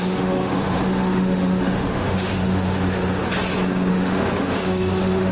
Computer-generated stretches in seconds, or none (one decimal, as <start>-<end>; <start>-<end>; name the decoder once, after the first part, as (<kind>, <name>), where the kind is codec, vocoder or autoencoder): 0.0-3.2 (autoencoder, DAC-VAE); 3.9-5.3